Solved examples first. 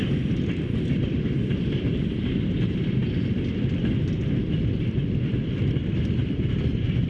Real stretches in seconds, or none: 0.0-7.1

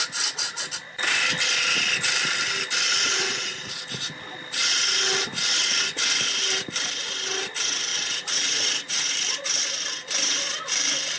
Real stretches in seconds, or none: 0.0-2.9; 3.8-7.9; 9.1-11.2

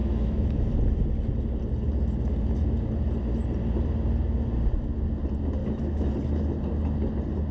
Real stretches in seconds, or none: 0.7-5.6; 6.1-7.5

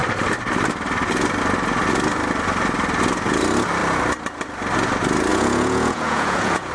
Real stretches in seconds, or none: 0.0-5.3

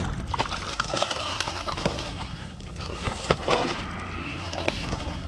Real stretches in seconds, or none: 0.0-0.7; 3.8-4.2

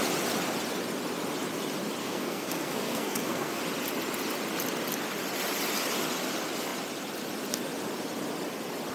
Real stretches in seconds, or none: 0.0-2.0; 3.6-8.9

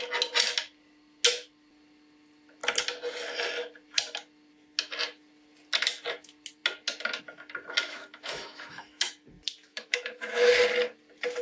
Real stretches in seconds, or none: 0.0-7.8; 9.1-9.7; 10.5-11.4

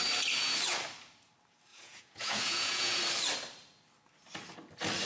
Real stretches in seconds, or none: 0.0-1.7; 3.0-5.1